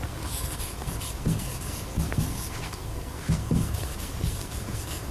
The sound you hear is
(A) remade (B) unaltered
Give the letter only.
A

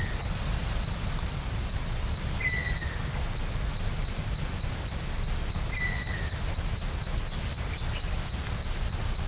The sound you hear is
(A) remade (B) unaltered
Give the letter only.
B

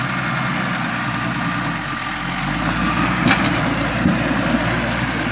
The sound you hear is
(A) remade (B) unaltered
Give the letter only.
B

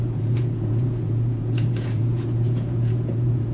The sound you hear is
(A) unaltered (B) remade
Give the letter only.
B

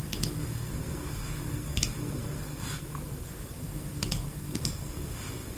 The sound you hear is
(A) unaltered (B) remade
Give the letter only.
B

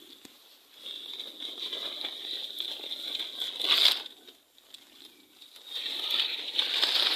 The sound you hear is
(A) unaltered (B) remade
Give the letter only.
A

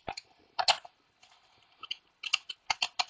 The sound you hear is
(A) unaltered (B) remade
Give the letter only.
A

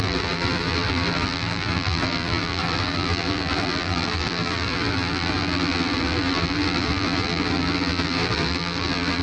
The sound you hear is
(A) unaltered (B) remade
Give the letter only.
B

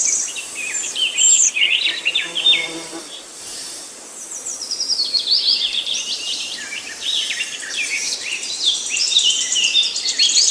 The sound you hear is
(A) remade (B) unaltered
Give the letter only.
A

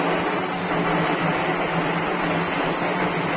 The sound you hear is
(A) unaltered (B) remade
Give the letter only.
A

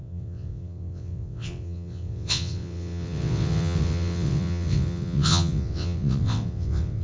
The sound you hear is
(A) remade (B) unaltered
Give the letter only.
A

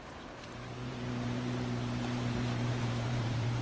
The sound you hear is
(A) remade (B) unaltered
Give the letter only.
A